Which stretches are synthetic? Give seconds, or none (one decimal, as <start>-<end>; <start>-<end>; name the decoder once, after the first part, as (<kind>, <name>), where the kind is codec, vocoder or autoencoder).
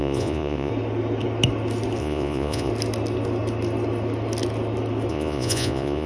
0.0-0.7 (vocoder, Vocos); 2.0-2.7; 5.1-6.1